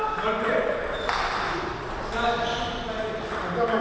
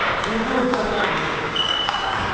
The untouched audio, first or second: first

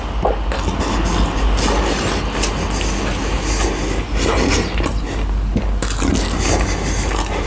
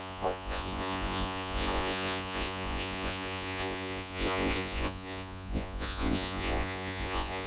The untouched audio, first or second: first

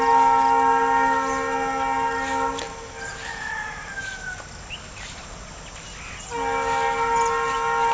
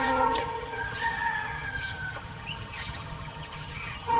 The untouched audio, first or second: first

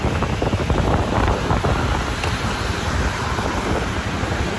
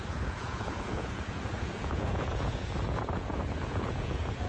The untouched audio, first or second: first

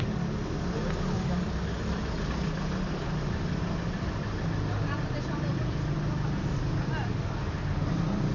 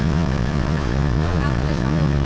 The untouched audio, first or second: first